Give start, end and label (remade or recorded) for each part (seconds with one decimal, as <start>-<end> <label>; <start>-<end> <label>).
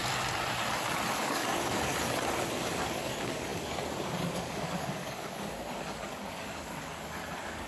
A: 0.0-1.2 recorded; 1.2-1.9 remade; 1.9-2.6 recorded; 2.6-7.7 remade